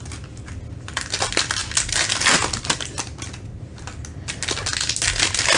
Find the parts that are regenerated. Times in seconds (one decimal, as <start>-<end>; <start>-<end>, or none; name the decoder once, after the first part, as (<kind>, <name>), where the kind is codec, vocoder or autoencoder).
none